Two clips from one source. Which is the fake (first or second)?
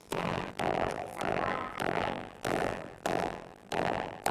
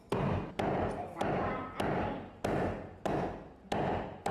first